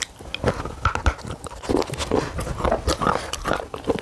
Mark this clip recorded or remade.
recorded